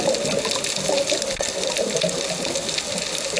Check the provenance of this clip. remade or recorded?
recorded